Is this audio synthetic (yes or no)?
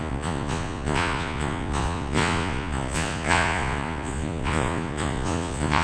yes